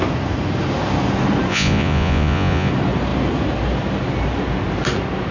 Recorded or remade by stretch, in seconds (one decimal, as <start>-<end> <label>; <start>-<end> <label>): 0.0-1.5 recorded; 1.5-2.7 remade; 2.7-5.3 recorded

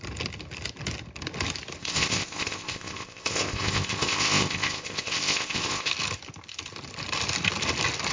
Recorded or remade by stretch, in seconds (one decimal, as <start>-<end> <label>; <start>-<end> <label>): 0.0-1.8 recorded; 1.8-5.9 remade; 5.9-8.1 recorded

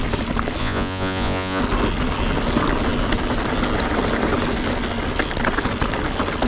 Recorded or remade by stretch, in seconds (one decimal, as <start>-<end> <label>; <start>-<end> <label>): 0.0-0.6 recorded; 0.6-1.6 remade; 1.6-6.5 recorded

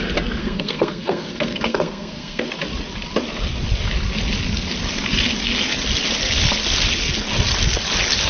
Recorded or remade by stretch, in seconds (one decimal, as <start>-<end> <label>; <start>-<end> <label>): 0.0-0.4 recorded; 0.4-2.4 remade; 2.4-8.3 recorded

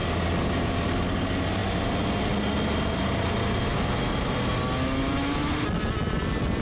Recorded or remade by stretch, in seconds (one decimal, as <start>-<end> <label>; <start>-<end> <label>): 0.0-6.6 recorded

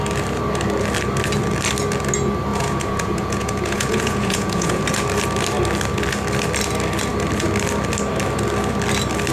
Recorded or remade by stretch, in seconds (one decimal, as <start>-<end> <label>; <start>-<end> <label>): 0.0-2.5 recorded; 2.5-4.8 remade; 4.8-9.3 recorded